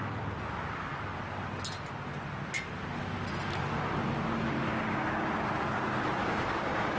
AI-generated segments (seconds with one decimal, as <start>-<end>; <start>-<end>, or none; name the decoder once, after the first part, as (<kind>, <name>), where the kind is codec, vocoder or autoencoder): 4.8-5.3 (codec, DAC); 6.2-7.0